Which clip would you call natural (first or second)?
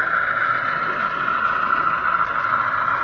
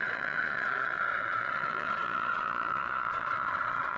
first